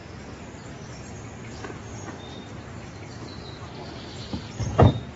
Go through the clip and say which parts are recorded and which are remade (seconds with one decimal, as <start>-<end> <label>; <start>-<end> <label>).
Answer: 0.0-5.2 recorded